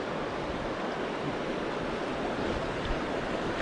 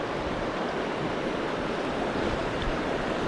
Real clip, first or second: first